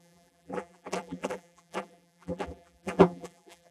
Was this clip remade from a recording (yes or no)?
yes